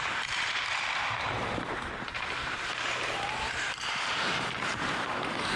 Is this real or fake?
fake